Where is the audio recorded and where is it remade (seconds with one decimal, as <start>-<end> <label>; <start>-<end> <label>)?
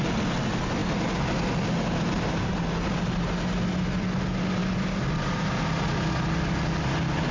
0.0-7.3 recorded